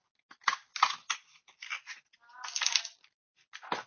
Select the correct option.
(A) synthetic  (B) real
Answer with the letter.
B